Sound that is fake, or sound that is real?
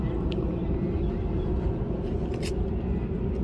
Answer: real